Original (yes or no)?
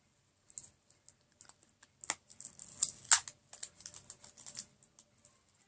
yes